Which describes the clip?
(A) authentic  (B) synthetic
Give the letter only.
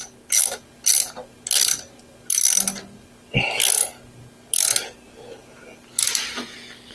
A